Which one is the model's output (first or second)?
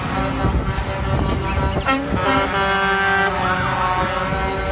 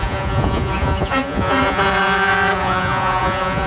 second